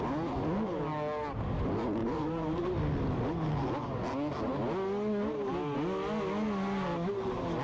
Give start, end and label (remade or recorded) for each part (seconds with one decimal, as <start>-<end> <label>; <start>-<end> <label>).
0.0-2.0 recorded; 2.0-2.7 remade; 2.7-7.6 recorded